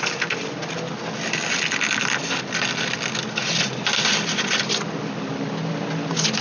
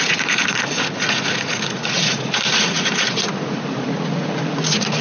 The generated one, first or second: second